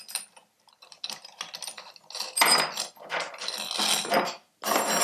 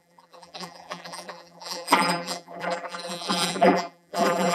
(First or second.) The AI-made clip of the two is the second